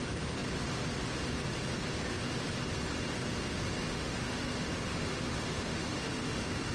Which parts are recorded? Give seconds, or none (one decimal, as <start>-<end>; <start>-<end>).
0.0-3.9